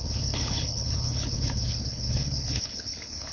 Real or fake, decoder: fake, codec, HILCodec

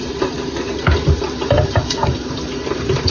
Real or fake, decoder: fake, vocoder, BigVGAN v2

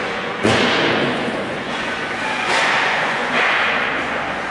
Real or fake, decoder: fake, vocoder, Vocos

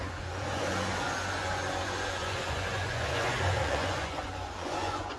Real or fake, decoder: fake, vocoder, Vocos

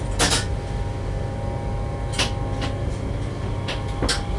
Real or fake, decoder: real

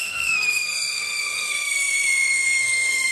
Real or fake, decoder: fake, codec, SNAC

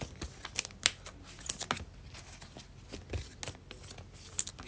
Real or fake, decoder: real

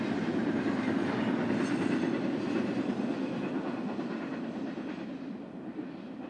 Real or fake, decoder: real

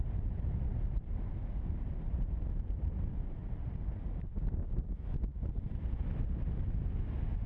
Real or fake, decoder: real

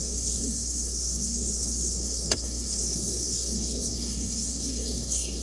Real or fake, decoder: fake, codec, SNAC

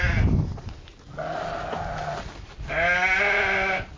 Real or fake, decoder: real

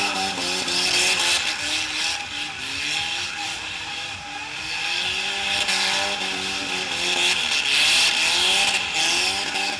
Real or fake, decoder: real